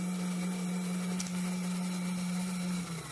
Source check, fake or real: real